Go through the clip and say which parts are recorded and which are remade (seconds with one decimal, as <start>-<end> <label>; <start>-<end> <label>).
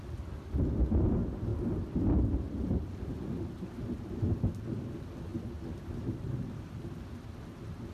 0.0-7.9 recorded